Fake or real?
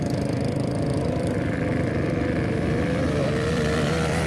fake